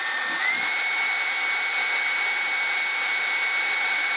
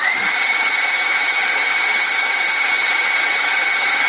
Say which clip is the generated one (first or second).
second